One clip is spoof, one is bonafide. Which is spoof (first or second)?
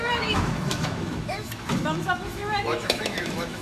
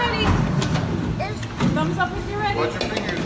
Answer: first